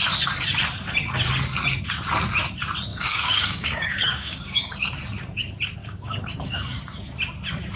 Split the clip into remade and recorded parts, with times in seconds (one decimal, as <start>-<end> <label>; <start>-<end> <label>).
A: 0.0-2.9 recorded; 2.9-4.9 remade; 4.9-5.8 recorded; 5.8-6.8 remade; 6.8-7.8 recorded

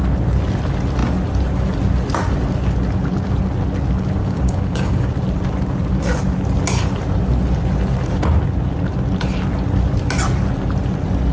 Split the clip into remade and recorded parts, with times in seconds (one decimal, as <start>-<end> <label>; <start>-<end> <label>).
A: 0.0-4.2 recorded; 4.2-5.1 remade; 5.1-11.3 recorded

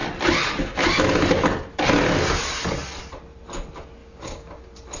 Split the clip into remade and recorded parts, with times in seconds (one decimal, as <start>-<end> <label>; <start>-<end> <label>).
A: 0.0-4.0 recorded; 4.0-4.6 remade; 4.6-5.0 recorded

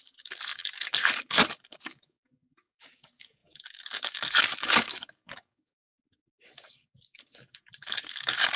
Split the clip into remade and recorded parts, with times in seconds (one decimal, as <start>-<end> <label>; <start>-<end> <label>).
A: 0.0-8.6 remade